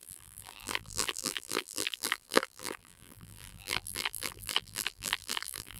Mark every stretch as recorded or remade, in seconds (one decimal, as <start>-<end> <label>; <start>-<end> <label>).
0.0-5.8 remade